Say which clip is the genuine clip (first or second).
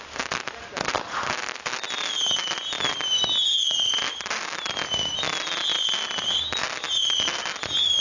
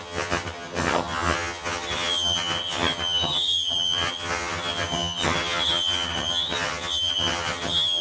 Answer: first